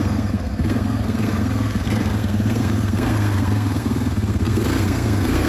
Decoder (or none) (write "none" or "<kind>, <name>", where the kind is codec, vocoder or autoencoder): codec, SNAC